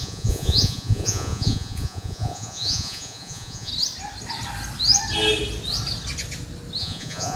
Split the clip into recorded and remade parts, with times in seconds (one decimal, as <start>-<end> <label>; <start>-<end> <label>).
0.0-3.7 remade; 3.7-6.8 recorded; 6.8-7.4 remade